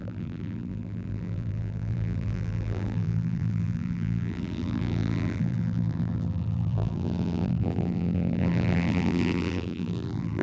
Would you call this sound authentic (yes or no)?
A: no